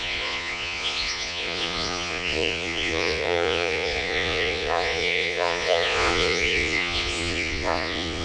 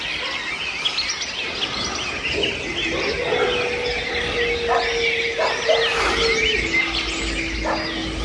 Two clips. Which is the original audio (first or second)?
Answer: second